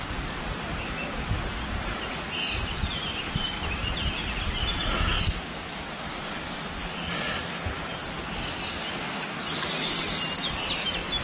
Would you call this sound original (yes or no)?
yes